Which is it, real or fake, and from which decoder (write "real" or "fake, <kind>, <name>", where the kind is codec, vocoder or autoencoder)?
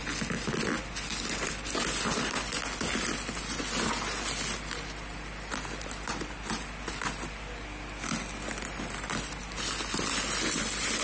real